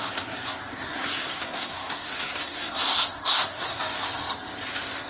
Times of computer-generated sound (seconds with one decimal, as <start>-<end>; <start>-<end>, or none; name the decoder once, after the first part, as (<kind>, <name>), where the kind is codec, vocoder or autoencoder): 0.7-3.8 (codec, SNAC)